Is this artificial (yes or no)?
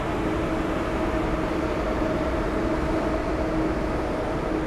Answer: no